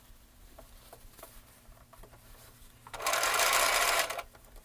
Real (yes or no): no